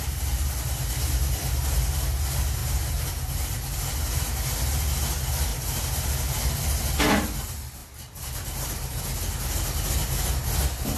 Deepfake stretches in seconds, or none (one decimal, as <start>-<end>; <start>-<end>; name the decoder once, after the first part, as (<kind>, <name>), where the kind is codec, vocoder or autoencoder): 2.6-3.1 (vocoder, BigVGAN v2); 5.5-6.0; 7.8-9.0